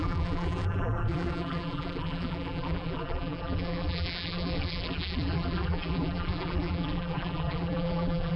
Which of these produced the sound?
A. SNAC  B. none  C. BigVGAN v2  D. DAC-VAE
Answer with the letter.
C